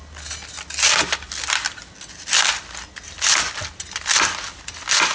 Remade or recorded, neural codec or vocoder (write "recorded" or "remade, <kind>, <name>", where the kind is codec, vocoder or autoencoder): recorded